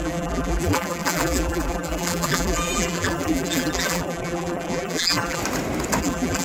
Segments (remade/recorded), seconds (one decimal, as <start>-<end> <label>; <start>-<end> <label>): 0.0-5.4 remade; 5.4-6.0 recorded; 6.0-6.4 remade